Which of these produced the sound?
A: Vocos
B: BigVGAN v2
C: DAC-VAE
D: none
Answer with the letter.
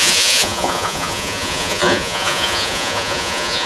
A